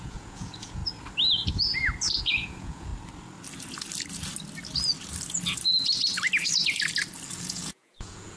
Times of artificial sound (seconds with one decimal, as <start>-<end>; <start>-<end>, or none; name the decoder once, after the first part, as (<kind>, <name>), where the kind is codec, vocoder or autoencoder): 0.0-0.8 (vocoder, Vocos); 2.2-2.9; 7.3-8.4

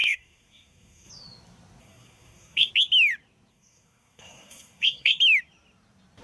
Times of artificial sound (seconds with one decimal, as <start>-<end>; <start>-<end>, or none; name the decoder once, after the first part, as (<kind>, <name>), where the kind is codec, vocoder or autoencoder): 0.0-1.1 (codec, SNAC); 1.8-2.7; 3.5-5.2

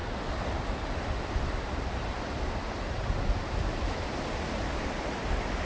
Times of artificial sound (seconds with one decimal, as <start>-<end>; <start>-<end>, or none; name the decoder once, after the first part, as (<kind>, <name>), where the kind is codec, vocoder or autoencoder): none